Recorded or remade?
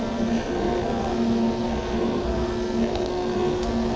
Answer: remade